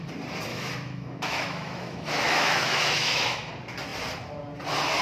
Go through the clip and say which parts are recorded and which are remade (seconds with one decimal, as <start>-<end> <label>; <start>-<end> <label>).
0.0-0.5 recorded; 0.5-3.5 remade; 3.5-5.0 recorded